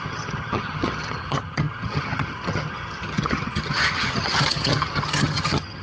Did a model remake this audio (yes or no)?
yes